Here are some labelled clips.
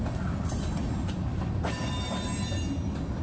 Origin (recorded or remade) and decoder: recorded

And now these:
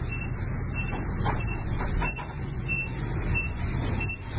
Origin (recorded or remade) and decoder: remade, vocoder, Vocos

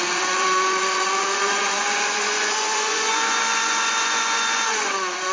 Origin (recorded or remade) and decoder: remade, vocoder, Vocos